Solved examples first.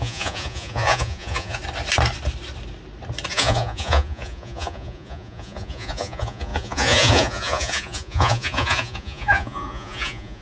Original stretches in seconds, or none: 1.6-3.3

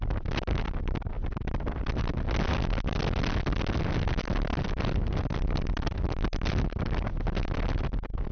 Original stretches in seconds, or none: 0.0-8.3